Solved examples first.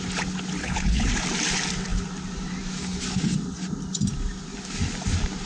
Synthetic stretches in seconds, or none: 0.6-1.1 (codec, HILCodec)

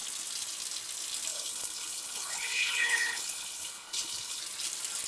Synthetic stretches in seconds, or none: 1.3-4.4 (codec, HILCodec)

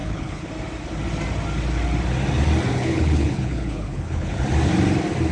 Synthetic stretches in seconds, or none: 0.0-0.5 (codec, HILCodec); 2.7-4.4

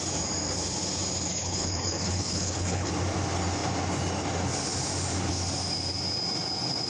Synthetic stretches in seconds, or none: 1.3-2.9 (codec, HILCodec)

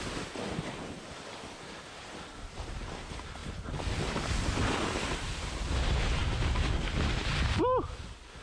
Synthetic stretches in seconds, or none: none

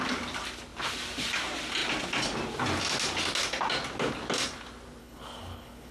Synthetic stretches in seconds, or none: 5.0-5.9 (codec, HILCodec)

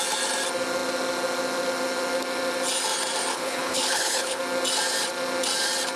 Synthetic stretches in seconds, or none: 3.3-4.4 (codec, HILCodec)